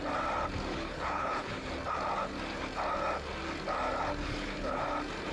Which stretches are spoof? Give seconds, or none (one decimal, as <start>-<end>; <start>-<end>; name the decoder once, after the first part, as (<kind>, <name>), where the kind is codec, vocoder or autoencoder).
0.7-1.7 (codec, HILCodec); 4.2-4.8